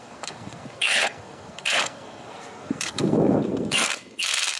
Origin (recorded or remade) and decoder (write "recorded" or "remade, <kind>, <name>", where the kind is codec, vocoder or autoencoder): remade, codec, SNAC